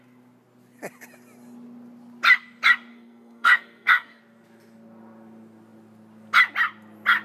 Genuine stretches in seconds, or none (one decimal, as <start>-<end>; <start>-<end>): 0.0-2.9; 4.2-7.2